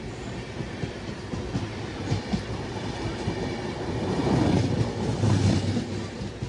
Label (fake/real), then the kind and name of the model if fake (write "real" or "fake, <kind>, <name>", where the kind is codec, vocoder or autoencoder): fake, vocoder, BigVGAN v2